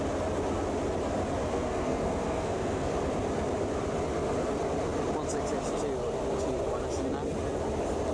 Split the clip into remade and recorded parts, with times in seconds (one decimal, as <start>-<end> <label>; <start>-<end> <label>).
0.0-1.5 recorded; 1.5-2.9 remade; 2.9-8.1 recorded